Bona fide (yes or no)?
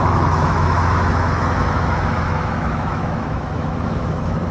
no